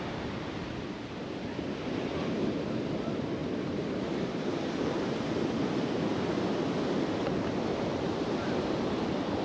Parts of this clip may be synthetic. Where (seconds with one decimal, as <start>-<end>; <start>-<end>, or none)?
none